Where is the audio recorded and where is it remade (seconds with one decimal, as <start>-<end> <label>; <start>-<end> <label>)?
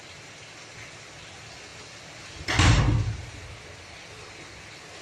0.0-5.0 recorded